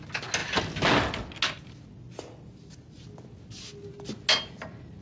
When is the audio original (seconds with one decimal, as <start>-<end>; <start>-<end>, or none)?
0.0-5.0

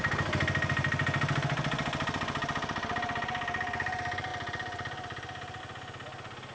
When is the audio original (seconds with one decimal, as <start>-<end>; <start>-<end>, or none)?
0.0-6.5

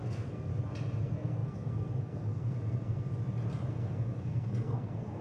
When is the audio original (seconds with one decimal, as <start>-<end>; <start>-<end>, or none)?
0.5-1.0; 3.1-3.7

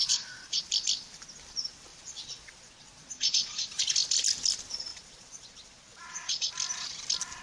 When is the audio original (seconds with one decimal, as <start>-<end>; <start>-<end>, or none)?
0.6-1.9; 3.8-4.9; 6.5-7.4

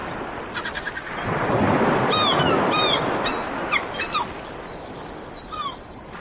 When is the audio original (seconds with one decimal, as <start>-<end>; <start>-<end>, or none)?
0.0-6.2